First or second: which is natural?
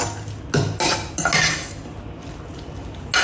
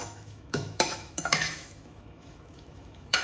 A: first